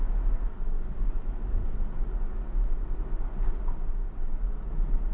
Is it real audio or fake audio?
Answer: real